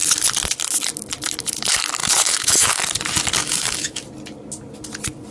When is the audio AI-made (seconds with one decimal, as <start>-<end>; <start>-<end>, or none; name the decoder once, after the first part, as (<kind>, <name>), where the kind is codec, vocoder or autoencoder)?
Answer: 2.0-2.8 (autoencoder, DAC-VAE); 3.4-4.0